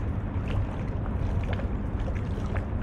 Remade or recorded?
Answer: recorded